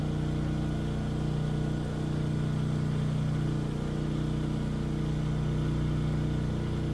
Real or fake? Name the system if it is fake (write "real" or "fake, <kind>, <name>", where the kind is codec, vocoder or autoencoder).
real